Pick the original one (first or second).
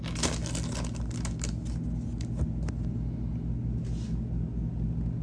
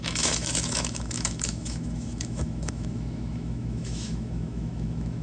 first